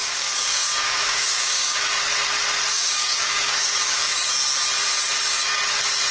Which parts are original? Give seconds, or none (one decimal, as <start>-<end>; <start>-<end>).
1.8-2.7; 4.3-6.1